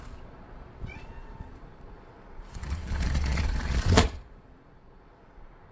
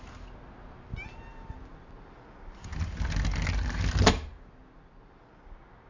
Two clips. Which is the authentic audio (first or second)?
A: second